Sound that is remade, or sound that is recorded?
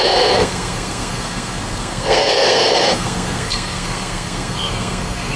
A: remade